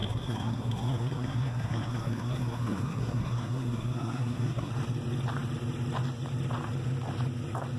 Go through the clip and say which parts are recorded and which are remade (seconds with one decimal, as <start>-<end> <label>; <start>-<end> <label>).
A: 0.0-4.7 remade; 4.7-7.8 recorded